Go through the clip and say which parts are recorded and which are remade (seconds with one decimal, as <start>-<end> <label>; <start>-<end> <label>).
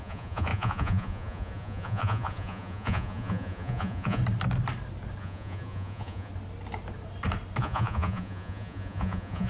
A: 0.0-4.2 remade; 4.2-5.2 recorded; 5.2-6.3 remade; 6.3-7.6 recorded; 7.6-9.5 remade